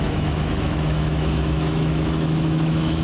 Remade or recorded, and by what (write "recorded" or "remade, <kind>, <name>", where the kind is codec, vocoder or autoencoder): remade, autoencoder, DAC-VAE